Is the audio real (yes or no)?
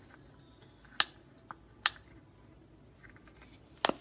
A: yes